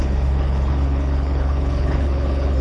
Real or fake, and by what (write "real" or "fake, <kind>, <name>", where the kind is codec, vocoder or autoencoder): fake, codec, HILCodec